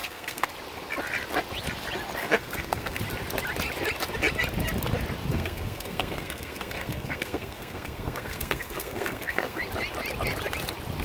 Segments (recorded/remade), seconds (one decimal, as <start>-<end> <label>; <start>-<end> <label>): 0.0-0.5 remade; 0.5-2.2 recorded; 2.2-3.0 remade; 3.0-5.3 recorded; 5.3-9.6 remade; 9.6-11.0 recorded

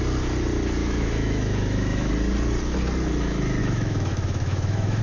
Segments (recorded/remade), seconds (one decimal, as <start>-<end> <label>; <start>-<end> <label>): 0.0-0.8 recorded; 0.8-2.1 remade; 2.1-3.6 recorded; 3.6-5.0 remade

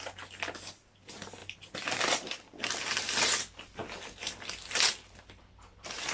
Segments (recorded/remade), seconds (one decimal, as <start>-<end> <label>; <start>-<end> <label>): 0.0-6.1 recorded

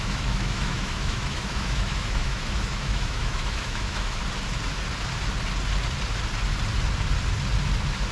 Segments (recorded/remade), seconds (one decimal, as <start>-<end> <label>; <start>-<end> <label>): 0.0-4.2 remade; 4.2-8.1 recorded

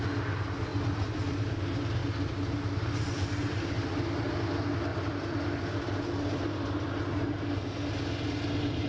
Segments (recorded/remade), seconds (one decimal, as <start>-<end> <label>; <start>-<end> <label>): 0.0-0.7 recorded; 0.7-1.4 remade; 1.4-2.0 recorded; 2.0-4.0 remade; 4.0-4.9 recorded; 4.9-6.9 remade; 6.9-8.9 recorded